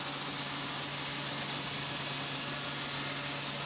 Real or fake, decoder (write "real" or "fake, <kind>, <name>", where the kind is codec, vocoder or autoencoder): real